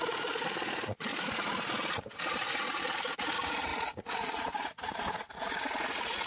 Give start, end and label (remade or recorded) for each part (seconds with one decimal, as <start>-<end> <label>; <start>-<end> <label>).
0.0-6.3 remade